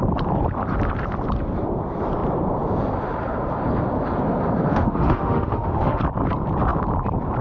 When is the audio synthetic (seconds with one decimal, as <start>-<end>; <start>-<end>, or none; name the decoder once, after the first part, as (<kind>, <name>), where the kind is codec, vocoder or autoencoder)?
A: 4.7-6.0 (autoencoder, DAC-VAE)